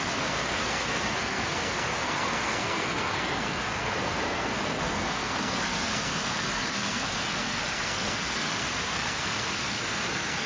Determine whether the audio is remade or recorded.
remade